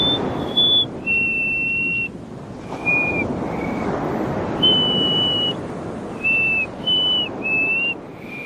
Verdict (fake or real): real